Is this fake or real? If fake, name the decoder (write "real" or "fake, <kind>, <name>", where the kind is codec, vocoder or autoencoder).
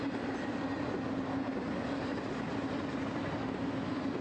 real